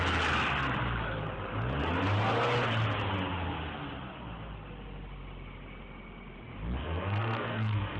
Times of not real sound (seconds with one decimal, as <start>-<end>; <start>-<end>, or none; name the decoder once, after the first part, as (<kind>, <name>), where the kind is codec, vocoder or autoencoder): 6.8-8.0 (codec, SNAC)